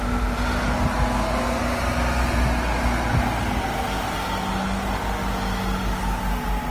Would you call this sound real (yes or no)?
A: yes